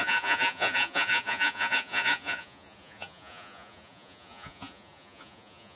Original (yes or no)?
no